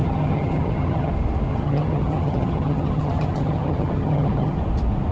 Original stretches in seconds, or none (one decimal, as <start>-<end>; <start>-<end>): 1.1-1.5; 4.6-5.1